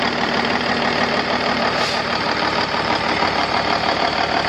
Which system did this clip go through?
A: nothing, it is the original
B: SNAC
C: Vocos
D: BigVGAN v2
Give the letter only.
D